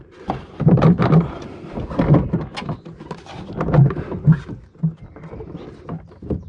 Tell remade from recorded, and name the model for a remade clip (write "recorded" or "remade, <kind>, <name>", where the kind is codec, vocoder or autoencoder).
recorded